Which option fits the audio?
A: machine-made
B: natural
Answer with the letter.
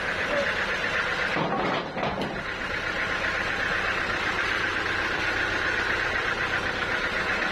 B